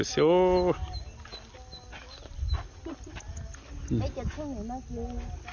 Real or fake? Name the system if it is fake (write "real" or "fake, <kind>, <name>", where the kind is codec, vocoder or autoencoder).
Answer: real